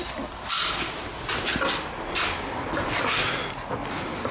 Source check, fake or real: real